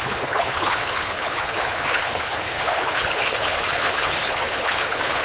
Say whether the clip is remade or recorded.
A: remade